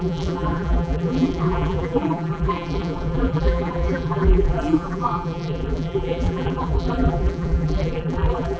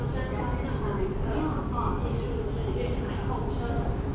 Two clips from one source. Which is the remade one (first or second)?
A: first